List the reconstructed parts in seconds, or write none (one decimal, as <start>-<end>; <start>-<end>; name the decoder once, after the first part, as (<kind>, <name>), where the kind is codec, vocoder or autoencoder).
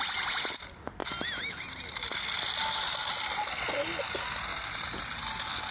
none